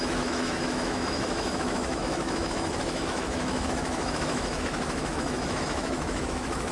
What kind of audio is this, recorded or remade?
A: remade